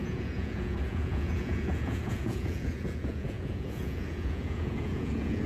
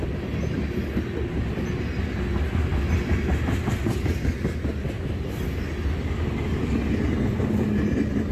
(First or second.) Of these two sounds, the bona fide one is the second